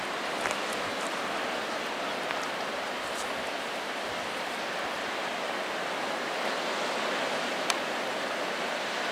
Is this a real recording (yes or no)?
yes